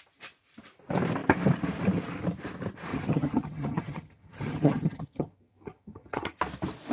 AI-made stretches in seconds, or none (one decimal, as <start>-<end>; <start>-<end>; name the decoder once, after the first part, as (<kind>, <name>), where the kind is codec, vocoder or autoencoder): 2.9-6.4 (vocoder, HiFi-GAN)

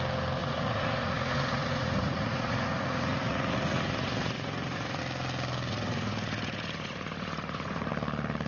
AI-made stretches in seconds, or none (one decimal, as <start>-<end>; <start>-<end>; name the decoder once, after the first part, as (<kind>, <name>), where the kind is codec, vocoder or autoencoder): 0.4-5.0 (vocoder, Vocos); 5.7-7.9